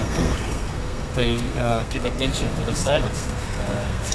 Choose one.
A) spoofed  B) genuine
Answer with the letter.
A